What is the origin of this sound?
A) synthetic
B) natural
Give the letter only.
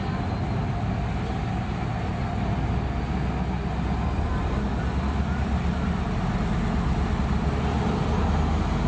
B